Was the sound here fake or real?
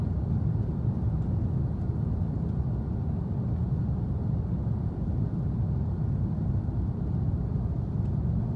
real